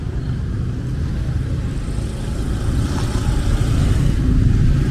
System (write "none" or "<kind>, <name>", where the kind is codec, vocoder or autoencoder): none